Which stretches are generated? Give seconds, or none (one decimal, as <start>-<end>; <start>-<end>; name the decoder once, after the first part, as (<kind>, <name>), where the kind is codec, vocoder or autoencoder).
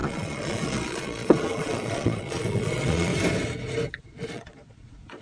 0.0-3.1 (vocoder, Vocos); 4.0-5.2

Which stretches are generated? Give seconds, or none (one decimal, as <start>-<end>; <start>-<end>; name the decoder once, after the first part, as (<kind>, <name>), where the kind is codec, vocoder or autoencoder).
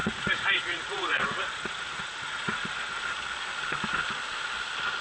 0.0-3.0 (vocoder, Vocos)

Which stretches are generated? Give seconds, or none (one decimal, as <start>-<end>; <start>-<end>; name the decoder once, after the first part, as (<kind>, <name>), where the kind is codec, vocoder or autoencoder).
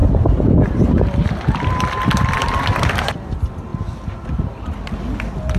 0.0-2.6 (vocoder, BigVGAN v2); 3.7-5.6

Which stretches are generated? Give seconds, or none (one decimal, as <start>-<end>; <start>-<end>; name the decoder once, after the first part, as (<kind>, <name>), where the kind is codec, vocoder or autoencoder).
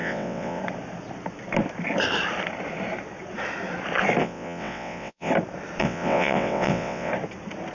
0.0-0.6 (vocoder, WaveNeXt); 4.2-5.3; 5.8-7.1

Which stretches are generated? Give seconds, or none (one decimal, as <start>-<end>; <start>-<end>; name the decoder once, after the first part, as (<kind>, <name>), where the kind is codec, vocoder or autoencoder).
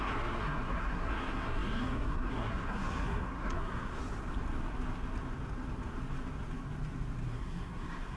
0.0-4.0 (codec, SNAC); 7.3-8.2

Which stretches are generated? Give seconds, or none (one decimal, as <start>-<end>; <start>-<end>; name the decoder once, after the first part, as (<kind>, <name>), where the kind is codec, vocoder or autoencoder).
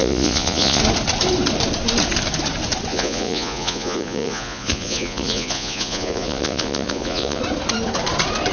0.0-0.8 (vocoder, Vocos); 2.9-7.4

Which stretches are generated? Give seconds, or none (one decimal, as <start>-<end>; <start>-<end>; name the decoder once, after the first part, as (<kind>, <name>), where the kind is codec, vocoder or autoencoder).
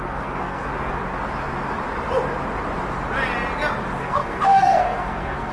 0.0-0.7 (codec, SNAC); 4.0-5.5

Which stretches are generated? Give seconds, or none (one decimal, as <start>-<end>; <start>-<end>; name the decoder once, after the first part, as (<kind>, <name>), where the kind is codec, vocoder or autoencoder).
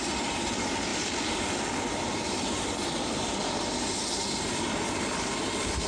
none